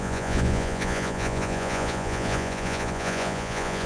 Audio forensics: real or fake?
fake